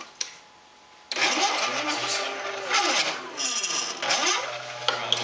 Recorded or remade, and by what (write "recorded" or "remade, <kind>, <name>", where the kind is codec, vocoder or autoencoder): recorded